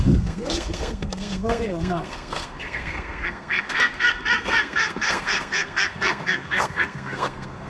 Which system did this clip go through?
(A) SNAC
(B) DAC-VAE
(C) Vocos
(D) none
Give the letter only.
A